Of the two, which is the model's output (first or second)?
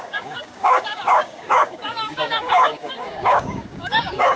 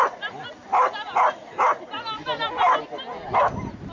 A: first